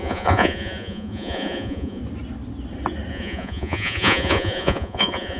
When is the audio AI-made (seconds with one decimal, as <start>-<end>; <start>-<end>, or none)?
0.0-2.0; 3.1-5.4